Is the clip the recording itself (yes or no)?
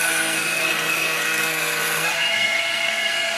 no